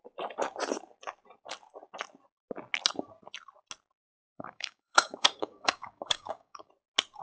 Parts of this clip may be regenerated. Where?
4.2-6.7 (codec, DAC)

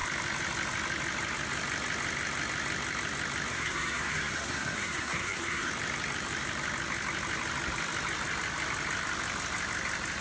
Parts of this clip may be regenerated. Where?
3.5-5.7 (codec, SNAC)

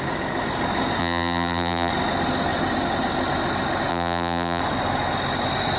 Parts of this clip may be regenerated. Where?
1.0-1.9 (vocoder, BigVGAN v2); 3.9-4.6

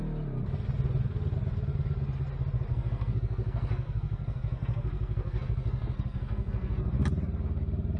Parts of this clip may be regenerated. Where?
2.7-6.9 (codec, SNAC)

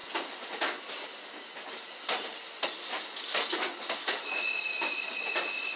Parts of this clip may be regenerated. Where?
none

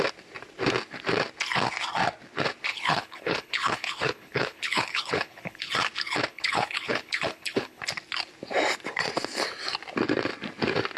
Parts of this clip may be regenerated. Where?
2.7-5.7 (codec, HILCodec); 6.3-7.8

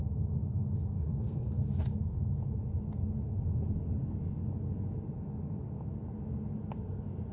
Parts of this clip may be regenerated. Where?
1.1-1.6 (codec, SNAC)

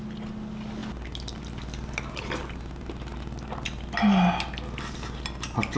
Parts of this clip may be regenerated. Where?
none